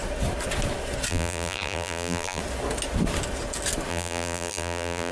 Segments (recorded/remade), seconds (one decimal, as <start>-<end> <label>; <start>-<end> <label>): 0.0-1.1 recorded; 1.1-2.4 remade; 2.4-3.9 recorded; 3.9-5.1 remade